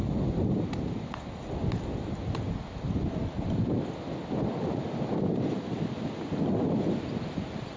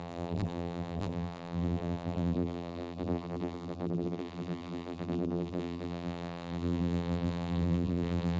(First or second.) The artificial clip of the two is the second